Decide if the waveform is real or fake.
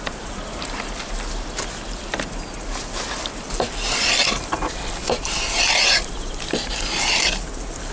fake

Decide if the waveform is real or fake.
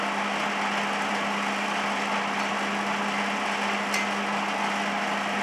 real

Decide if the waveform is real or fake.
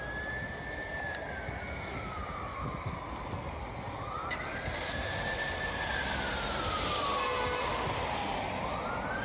real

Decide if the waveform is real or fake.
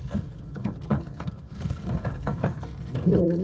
fake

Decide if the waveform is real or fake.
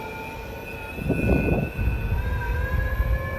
real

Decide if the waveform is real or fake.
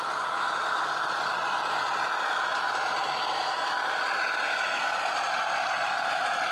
real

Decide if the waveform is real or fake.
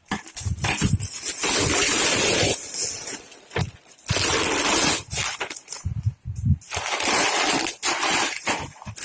real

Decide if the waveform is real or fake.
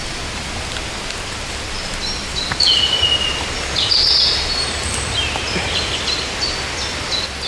real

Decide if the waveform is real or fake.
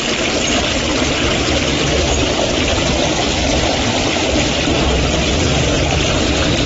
real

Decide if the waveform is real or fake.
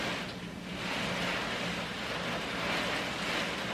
real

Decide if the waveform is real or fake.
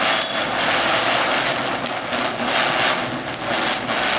real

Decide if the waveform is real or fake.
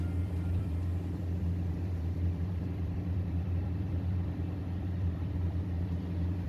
fake